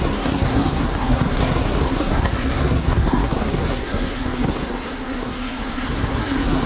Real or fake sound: fake